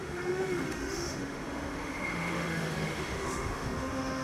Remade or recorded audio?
remade